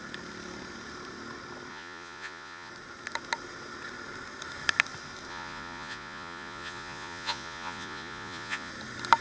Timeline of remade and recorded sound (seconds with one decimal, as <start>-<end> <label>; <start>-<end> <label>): 0.0-1.7 recorded; 1.7-2.7 remade; 2.7-5.3 recorded; 5.3-8.7 remade; 8.7-9.2 recorded